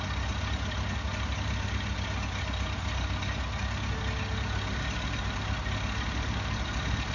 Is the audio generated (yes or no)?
no